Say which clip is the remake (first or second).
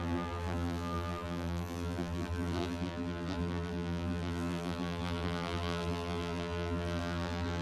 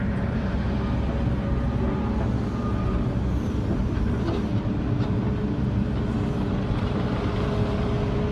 first